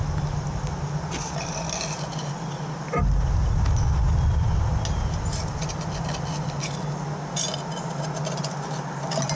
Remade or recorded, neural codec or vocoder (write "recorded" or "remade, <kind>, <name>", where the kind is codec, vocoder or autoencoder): recorded